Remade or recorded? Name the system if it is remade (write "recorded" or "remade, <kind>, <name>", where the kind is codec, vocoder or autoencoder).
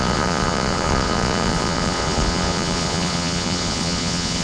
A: remade, vocoder, Vocos